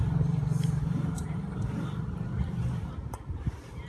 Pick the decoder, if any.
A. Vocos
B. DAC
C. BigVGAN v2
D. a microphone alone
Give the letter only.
C